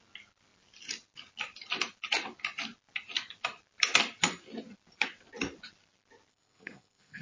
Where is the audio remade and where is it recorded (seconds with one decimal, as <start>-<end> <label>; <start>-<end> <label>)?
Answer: 0.0-6.3 recorded; 6.3-7.2 remade